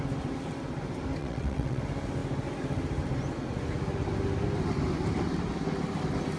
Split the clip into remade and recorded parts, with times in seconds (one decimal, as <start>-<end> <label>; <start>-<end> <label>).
0.0-1.2 recorded; 1.2-1.8 remade; 1.8-6.4 recorded